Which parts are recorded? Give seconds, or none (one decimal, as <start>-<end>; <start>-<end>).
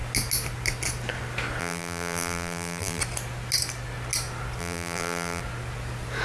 0.0-1.6; 3.0-4.6; 5.4-6.2